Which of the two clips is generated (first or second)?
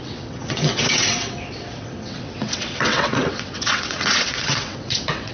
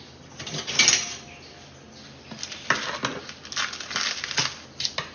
first